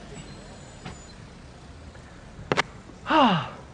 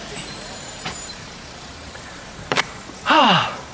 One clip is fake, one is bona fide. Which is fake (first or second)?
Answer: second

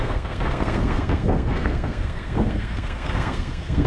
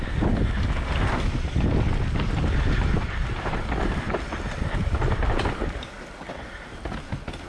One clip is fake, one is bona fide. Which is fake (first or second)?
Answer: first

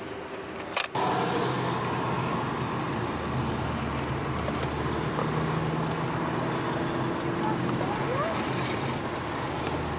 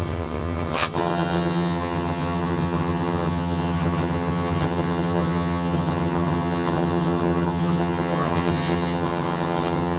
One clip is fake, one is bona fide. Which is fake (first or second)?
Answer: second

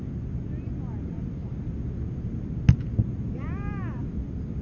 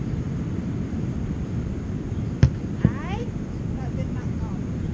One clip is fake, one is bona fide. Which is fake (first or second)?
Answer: second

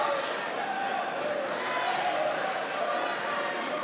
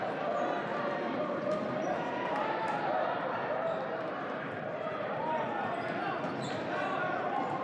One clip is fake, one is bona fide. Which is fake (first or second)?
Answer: second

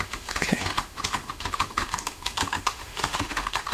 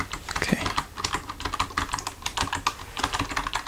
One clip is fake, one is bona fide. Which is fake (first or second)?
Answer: first